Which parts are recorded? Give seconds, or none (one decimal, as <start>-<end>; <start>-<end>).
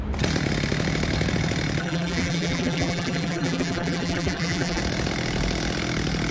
0.0-1.8; 4.8-6.3